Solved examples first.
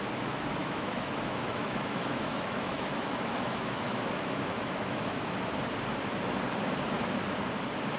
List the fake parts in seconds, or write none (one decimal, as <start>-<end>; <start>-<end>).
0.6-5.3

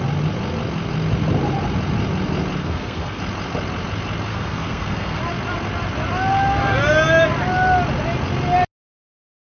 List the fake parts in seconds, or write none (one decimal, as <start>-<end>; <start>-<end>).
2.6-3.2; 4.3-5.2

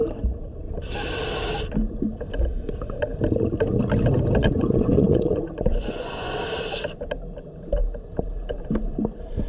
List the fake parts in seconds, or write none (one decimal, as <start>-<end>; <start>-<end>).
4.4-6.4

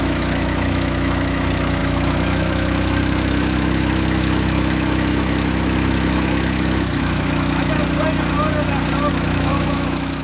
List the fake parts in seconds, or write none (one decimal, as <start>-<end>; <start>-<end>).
0.0-7.8; 9.1-10.2

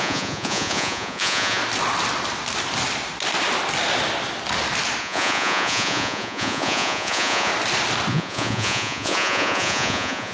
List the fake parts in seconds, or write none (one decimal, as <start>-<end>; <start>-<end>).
0.0-1.6; 5.0-7.5; 8.1-10.3